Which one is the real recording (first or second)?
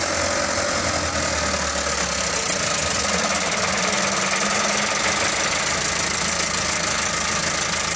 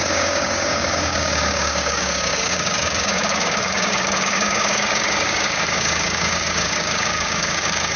first